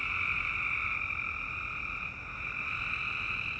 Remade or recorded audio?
recorded